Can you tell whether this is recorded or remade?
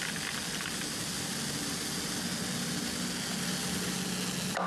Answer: recorded